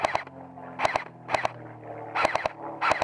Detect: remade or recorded recorded